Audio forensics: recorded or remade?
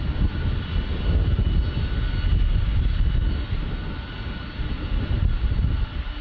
recorded